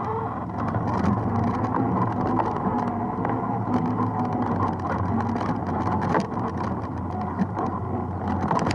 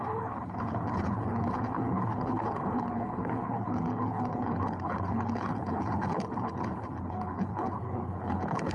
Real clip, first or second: first